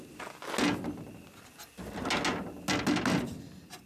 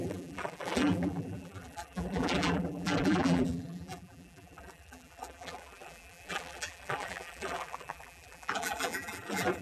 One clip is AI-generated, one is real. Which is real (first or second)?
first